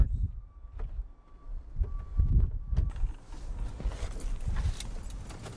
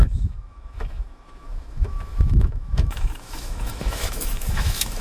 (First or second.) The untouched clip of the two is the first